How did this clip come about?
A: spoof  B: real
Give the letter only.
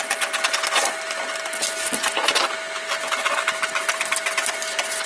B